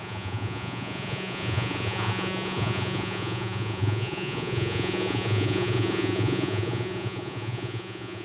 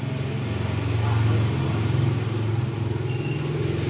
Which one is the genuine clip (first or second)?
second